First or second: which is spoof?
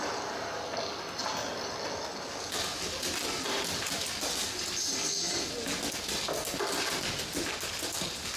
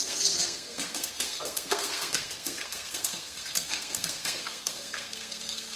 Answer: second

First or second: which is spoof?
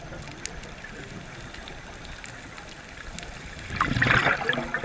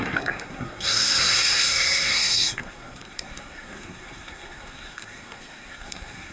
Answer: second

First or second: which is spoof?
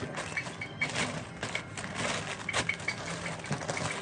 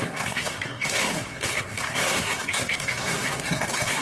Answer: second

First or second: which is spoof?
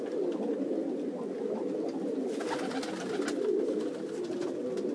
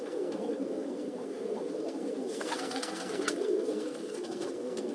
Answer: second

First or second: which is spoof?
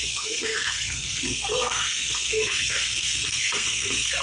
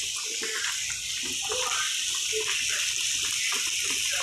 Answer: first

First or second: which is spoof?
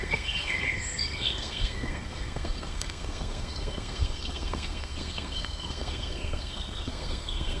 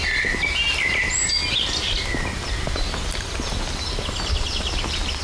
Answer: first